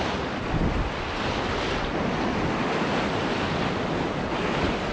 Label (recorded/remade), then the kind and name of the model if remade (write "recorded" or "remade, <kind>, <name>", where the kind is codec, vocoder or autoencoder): recorded